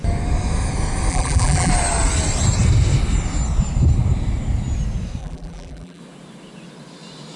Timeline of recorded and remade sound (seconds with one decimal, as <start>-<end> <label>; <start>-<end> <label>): 0.0-1.1 recorded; 1.1-1.7 remade; 1.7-5.2 recorded; 5.2-6.0 remade; 6.0-7.4 recorded

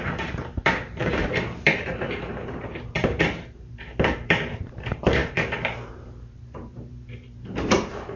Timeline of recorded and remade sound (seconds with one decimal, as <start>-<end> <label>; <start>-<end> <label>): 0.0-8.2 remade

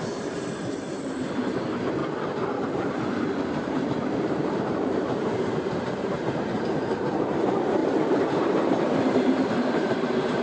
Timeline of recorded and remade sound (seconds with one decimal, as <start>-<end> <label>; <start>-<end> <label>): 0.0-2.0 remade; 2.0-3.6 recorded; 3.6-10.4 remade

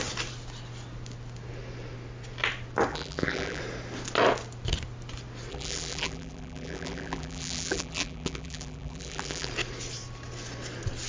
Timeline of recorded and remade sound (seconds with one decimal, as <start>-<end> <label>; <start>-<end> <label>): 0.0-2.9 recorded; 2.9-3.6 remade; 3.6-5.5 recorded; 5.5-9.5 remade; 9.5-11.1 recorded

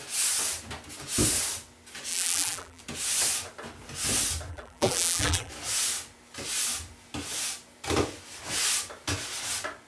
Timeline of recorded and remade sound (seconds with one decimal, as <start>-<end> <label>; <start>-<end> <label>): 0.0-2.1 recorded; 2.1-2.8 remade; 2.8-4.5 recorded; 4.5-5.5 remade; 5.5-9.9 recorded

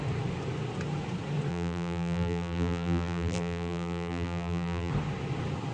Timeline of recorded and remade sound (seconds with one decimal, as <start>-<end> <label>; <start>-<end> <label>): 0.0-1.5 recorded; 1.5-4.9 remade; 4.9-5.7 recorded